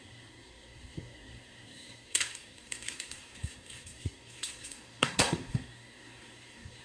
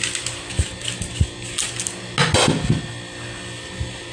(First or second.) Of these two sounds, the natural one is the second